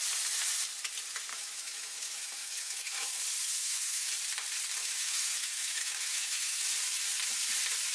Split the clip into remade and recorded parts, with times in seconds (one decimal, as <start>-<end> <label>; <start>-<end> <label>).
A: 0.0-1.3 recorded; 1.3-3.2 remade; 3.2-3.6 recorded; 3.6-4.1 remade; 4.1-4.8 recorded; 4.8-6.6 remade; 6.6-7.9 recorded